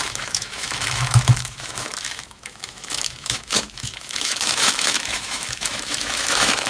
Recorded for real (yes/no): no